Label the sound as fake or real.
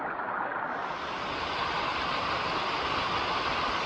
real